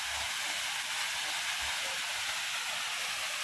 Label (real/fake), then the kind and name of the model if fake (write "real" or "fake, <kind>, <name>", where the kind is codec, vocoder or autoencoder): real